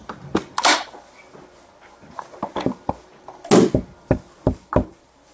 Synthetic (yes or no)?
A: no